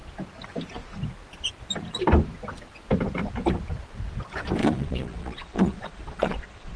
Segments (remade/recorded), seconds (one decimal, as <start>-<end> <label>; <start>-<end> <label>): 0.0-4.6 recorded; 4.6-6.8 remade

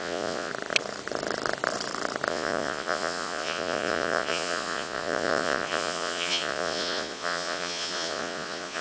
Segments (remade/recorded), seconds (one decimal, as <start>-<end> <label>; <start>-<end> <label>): 0.0-0.5 remade; 0.5-2.3 recorded; 2.3-8.8 remade

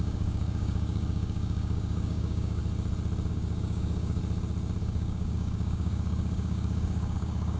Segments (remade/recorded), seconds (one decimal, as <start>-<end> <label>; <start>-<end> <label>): 0.0-2.6 remade; 2.6-3.3 recorded; 3.3-4.2 remade; 4.2-4.8 recorded; 4.8-7.6 remade

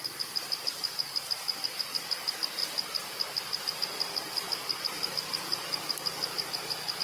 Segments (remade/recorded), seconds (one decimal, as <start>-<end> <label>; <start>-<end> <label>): 0.0-7.0 recorded

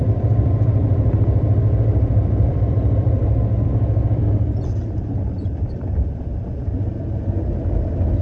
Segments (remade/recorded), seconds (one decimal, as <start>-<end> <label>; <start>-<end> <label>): 0.0-3.2 remade; 3.2-5.6 recorded; 5.6-6.3 remade; 6.3-8.2 recorded